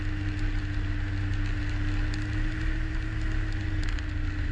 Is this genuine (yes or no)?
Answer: yes